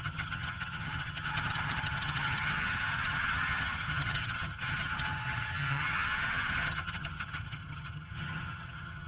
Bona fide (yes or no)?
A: no